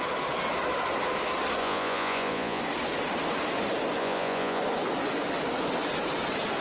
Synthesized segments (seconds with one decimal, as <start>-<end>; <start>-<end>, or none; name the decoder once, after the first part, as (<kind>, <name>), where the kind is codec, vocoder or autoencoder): 1.6-2.6 (vocoder, Vocos); 4.0-4.6